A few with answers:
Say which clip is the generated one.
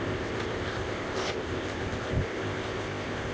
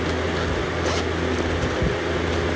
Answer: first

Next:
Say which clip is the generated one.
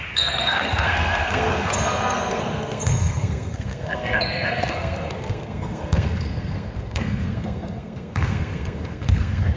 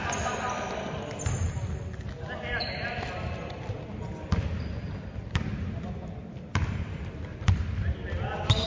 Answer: first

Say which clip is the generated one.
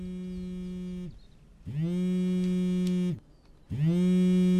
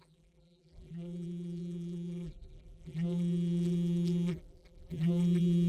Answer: second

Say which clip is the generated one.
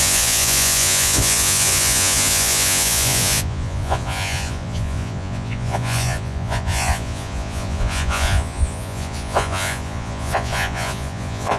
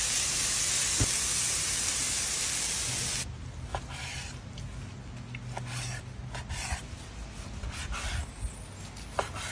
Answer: first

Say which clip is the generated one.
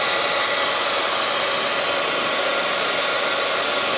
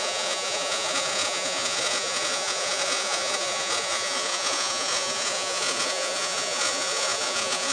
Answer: second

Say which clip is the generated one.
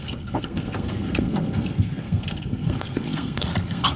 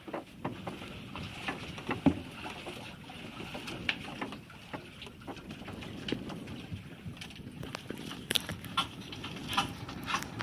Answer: first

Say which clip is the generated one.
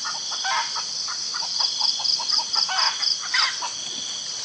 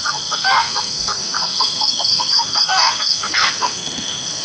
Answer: second